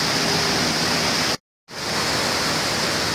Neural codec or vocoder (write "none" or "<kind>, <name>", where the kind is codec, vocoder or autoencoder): none